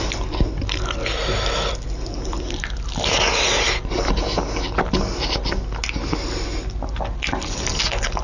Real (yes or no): yes